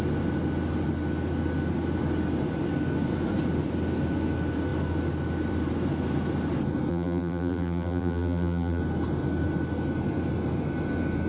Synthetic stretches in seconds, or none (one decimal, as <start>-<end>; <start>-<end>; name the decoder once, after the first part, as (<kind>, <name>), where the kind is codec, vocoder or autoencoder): 6.9-8.8 (vocoder, BigVGAN v2)